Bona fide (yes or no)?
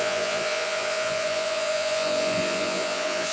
no